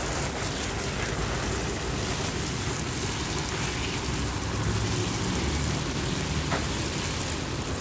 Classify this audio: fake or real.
real